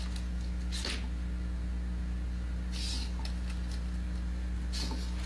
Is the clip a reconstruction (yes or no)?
no